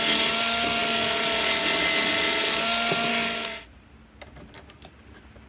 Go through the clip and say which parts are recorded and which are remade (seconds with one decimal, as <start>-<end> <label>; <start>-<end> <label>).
0.0-5.5 recorded